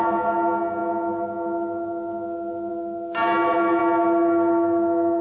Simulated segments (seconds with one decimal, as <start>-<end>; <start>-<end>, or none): none

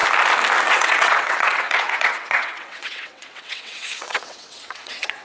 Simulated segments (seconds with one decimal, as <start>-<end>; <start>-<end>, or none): 0.7-5.2

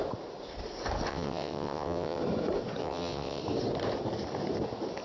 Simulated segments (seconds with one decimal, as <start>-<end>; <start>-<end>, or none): 1.1-2.2; 2.8-3.4

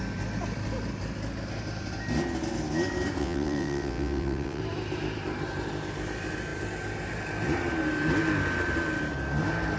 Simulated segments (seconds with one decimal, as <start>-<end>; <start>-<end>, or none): 3.2-4.6

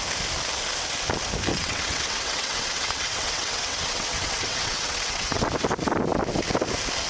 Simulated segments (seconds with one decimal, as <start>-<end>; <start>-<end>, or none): 1.5-5.5